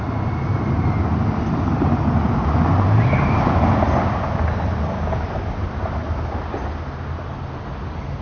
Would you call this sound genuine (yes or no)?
yes